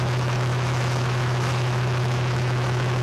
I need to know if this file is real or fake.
fake